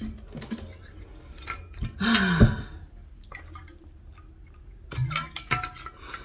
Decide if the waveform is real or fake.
real